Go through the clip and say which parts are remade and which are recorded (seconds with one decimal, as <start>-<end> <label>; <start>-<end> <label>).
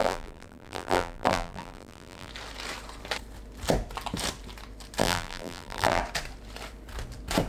0.0-2.3 remade; 2.3-5.0 recorded; 5.0-6.0 remade; 6.0-7.5 recorded